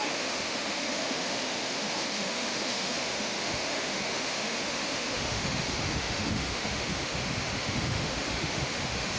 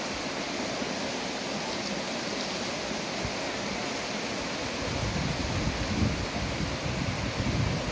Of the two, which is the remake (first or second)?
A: first